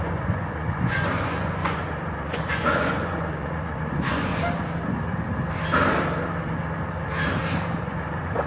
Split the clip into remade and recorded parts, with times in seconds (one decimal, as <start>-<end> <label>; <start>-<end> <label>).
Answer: 0.0-4.3 remade; 4.3-7.8 recorded; 7.8-8.5 remade

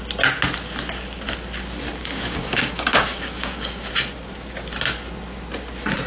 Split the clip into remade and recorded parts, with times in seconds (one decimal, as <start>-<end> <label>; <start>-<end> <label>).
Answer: 0.0-2.0 recorded; 2.0-3.9 remade; 3.9-6.1 recorded